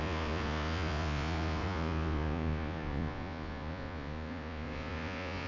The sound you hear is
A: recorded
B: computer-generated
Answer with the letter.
B